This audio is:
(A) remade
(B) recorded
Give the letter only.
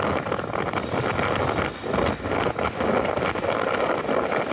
B